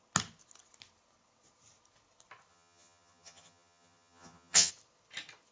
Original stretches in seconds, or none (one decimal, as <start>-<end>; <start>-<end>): 0.0-2.5; 4.7-5.5

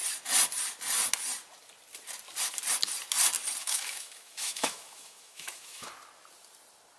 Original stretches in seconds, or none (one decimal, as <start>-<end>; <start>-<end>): 0.0-3.6; 5.9-7.0

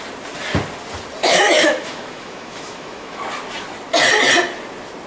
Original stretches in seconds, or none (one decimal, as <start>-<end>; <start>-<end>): 0.0-1.2; 3.2-5.1

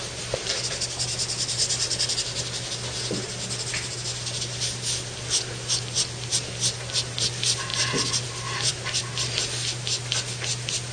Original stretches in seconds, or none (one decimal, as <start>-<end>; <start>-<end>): 0.0-10.9

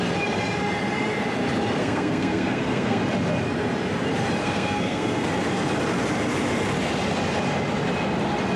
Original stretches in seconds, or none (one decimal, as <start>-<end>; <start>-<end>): 0.0-1.8; 3.0-4.4; 5.3-8.6

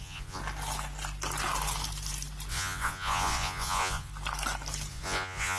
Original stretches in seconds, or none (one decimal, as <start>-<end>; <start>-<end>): 0.4-2.5; 4.1-4.9

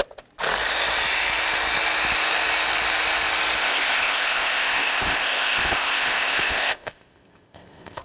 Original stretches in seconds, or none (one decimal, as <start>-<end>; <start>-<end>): 0.0-3.6